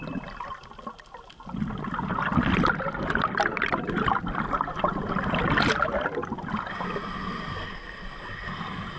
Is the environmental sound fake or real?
real